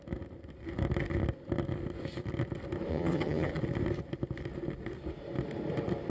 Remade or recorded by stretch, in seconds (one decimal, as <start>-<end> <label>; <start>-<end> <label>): 0.0-2.9 recorded; 2.9-3.5 remade; 3.5-6.1 recorded